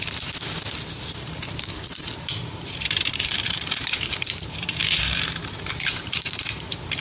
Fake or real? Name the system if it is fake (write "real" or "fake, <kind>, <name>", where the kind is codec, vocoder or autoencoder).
fake, vocoder, BigVGAN v2